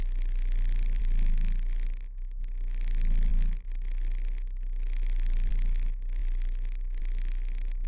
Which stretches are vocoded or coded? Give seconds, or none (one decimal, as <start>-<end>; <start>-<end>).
none